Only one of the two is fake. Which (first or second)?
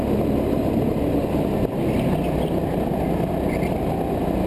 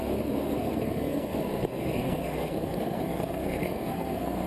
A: second